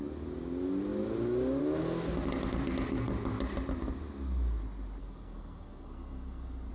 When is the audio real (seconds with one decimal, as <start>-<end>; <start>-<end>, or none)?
0.0-5.0